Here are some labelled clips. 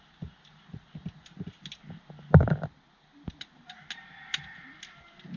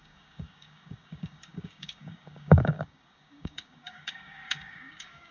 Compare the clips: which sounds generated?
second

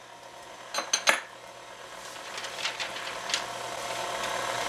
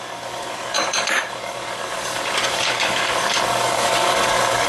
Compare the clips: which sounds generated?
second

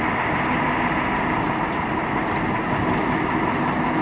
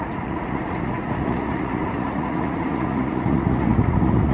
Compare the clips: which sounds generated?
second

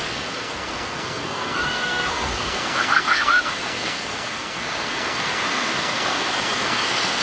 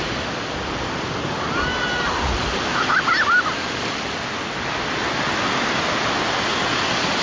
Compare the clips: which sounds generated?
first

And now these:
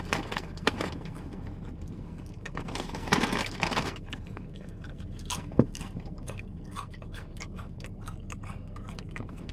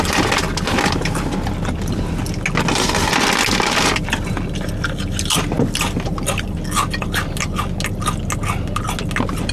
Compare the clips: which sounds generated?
first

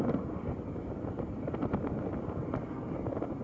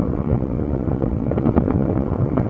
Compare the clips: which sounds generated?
second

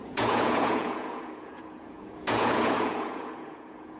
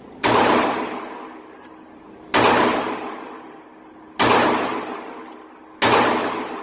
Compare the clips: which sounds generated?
first